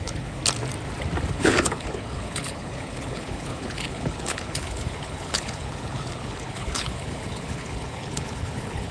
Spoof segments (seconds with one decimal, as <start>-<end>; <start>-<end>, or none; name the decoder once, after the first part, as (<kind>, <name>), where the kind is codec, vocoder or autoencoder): 0.0-0.4 (codec, HILCodec); 1.3-8.9